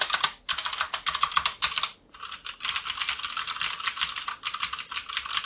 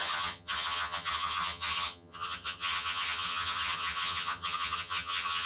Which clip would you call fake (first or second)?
second